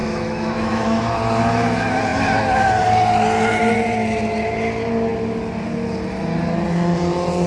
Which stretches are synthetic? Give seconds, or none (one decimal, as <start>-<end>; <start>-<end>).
0.0-1.0